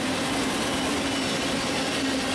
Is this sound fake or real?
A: real